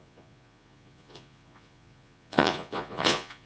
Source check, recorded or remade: remade